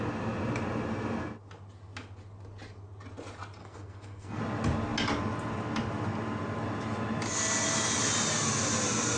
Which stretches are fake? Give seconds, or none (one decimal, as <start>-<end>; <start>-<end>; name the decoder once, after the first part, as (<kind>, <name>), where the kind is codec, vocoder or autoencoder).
3.6-4.4 (codec, SNAC)